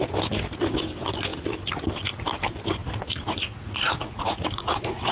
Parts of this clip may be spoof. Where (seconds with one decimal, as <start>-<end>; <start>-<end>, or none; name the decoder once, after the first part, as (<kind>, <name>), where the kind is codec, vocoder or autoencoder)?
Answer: 2.8-5.1 (vocoder, Vocos)